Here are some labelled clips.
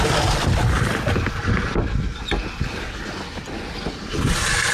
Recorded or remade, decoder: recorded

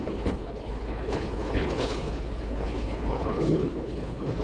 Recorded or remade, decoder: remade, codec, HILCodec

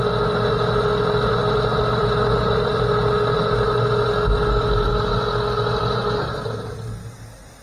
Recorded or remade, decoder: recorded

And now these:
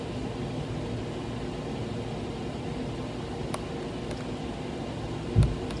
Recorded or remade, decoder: recorded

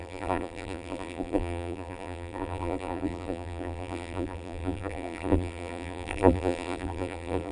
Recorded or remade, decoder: remade, vocoder, BigVGAN v2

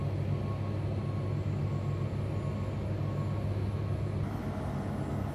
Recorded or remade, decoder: recorded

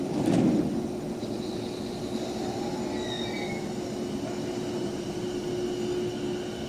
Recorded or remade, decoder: recorded